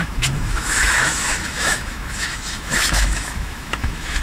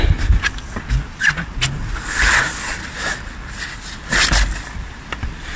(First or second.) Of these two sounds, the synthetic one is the first